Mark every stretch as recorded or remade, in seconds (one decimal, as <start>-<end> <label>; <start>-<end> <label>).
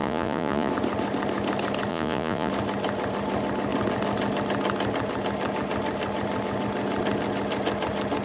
0.0-0.7 remade; 0.7-1.9 recorded; 1.9-2.5 remade; 2.5-8.2 recorded